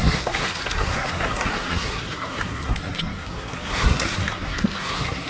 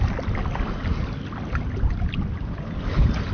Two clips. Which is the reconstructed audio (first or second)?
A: first